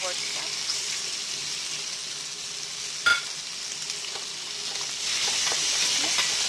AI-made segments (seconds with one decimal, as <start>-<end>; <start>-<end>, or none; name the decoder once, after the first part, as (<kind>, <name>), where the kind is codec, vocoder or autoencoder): none